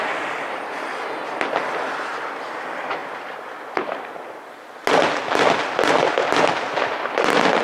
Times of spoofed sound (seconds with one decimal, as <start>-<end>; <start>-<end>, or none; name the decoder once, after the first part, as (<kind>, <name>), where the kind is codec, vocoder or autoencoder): none